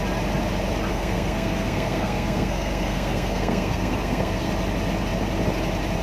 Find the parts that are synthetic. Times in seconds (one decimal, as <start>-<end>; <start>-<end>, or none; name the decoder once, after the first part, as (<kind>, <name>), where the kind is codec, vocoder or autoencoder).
0.9-4.5 (codec, SNAC)